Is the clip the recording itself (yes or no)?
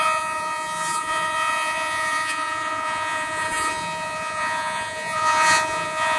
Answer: no